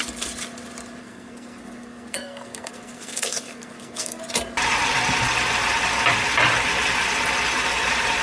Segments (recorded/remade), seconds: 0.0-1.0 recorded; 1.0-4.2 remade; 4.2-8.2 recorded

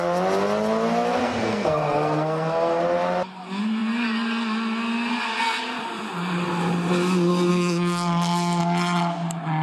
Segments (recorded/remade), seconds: 0.0-1.2 recorded; 1.2-2.8 remade; 2.8-7.5 recorded; 7.5-8.6 remade; 8.6-9.6 recorded